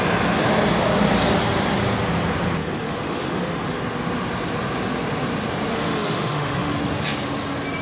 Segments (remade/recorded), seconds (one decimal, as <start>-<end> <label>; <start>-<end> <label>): 0.0-2.6 recorded; 2.6-3.8 remade; 3.8-5.7 recorded; 5.7-6.8 remade; 6.8-7.8 recorded